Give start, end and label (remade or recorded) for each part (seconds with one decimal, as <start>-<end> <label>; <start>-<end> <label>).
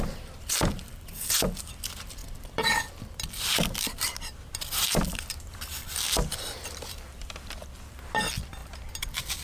0.0-9.4 remade